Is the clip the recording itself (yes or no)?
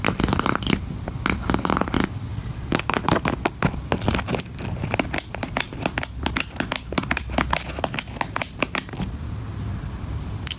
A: yes